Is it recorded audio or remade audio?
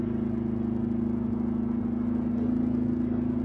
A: recorded